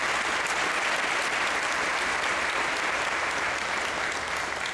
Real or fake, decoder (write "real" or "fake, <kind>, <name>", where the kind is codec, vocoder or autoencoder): real